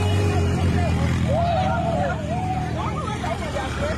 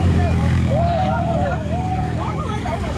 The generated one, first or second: second